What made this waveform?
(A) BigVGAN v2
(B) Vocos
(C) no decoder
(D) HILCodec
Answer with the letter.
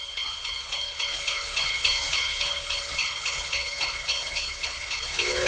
D